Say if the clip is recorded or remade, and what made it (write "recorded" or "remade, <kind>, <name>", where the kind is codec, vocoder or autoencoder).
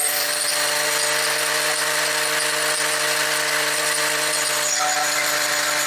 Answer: recorded